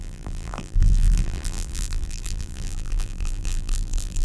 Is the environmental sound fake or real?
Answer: fake